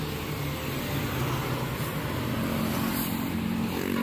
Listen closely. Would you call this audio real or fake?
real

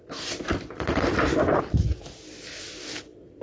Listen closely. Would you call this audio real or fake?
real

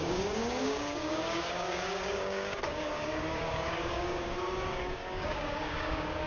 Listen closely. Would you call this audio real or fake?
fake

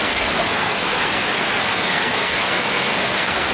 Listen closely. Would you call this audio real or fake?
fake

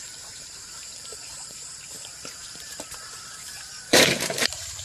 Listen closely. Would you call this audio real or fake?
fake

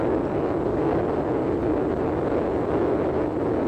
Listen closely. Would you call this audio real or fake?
real